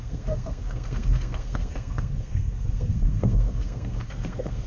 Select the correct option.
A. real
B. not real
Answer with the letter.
B